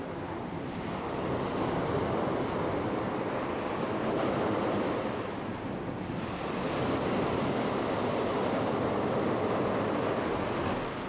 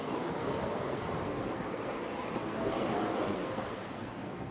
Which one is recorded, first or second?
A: first